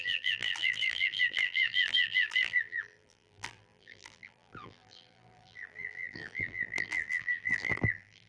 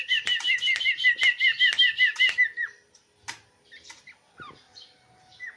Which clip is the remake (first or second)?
first